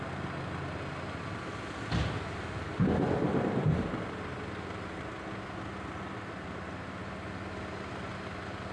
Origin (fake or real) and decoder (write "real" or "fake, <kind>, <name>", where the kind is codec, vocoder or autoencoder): real